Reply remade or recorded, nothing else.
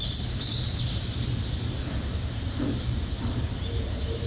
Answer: recorded